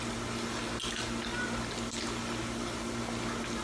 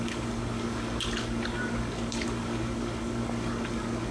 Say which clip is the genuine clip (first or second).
first